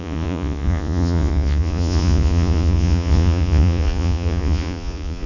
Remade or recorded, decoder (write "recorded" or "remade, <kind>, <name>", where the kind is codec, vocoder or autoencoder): remade, vocoder, Vocos